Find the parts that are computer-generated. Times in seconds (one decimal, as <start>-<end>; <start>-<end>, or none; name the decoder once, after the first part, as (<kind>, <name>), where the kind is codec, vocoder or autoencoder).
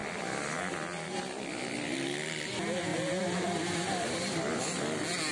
2.9-4.4 (vocoder, BigVGAN v2)